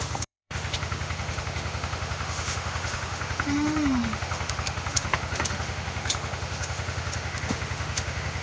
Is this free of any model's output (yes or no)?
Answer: no